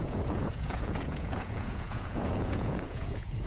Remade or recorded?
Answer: remade